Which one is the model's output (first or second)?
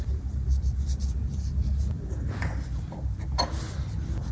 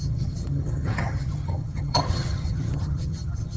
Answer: second